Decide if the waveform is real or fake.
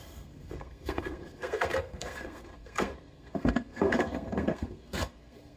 fake